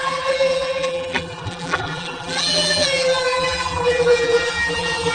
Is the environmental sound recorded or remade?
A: remade